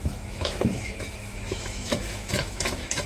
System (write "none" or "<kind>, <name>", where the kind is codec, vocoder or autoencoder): autoencoder, DAC-VAE